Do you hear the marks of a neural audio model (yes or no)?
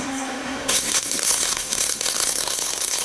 yes